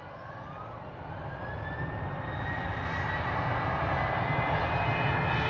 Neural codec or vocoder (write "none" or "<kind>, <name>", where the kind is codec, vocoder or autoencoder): none